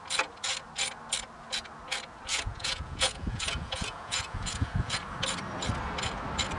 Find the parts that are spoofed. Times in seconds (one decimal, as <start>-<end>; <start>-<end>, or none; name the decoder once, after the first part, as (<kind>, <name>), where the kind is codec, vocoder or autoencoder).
2.3-5.0 (vocoder, Vocos)